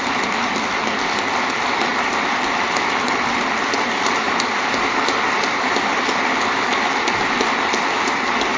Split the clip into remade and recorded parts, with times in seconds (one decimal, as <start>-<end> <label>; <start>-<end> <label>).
0.0-8.6 recorded